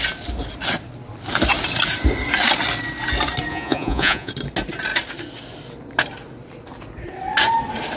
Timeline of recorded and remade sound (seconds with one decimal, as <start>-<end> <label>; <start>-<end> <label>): 0.0-3.5 recorded; 3.5-4.3 remade; 4.3-8.0 recorded